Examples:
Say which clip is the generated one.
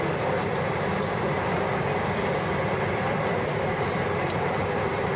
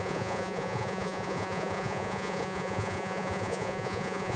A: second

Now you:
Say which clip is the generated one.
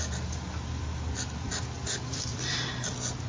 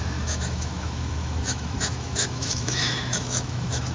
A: second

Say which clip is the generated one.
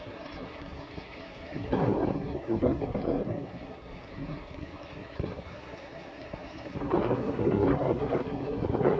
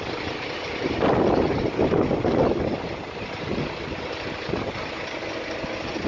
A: first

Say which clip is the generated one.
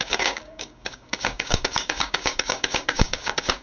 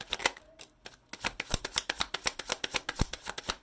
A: first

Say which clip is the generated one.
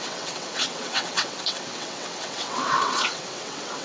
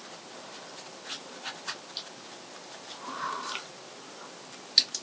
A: first